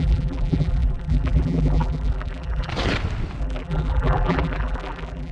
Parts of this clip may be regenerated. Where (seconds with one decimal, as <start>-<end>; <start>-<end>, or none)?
0.0-2.7; 3.4-5.3